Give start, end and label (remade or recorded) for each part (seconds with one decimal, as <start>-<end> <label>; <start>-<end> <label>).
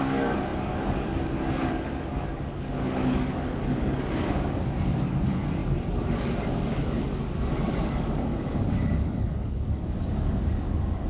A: 0.0-11.1 remade